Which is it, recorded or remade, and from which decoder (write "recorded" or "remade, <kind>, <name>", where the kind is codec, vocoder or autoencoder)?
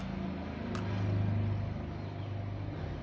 recorded